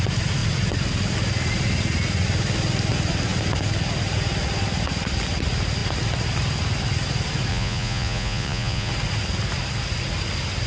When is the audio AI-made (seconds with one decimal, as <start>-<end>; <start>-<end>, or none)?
7.5-8.9